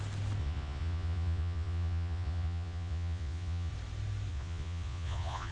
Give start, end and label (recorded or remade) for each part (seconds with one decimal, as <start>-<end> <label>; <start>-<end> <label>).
0.0-0.4 recorded; 0.4-3.7 remade; 3.7-4.3 recorded; 4.3-5.5 remade